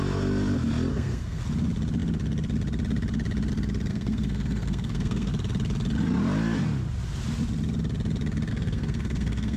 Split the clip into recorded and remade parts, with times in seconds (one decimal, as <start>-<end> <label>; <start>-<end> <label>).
0.0-0.9 recorded; 0.9-1.4 remade; 1.4-3.9 recorded; 3.9-5.3 remade; 5.3-8.5 recorded; 8.5-9.6 remade